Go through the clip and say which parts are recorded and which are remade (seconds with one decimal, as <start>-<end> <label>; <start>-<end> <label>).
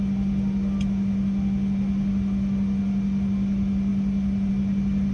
0.0-5.1 recorded